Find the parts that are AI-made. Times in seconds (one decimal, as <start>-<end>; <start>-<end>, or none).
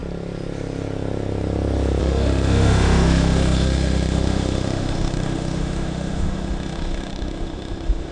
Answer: 2.0-8.1